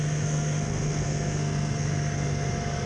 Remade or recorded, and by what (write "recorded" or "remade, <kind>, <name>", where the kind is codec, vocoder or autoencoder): remade, codec, SNAC